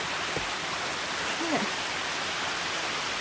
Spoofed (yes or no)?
no